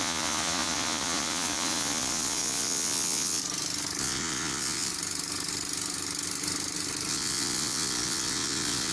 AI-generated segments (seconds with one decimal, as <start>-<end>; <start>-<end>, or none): 0.0-3.4; 4.0-4.9; 7.1-8.9